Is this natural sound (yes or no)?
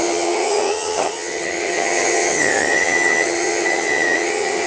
no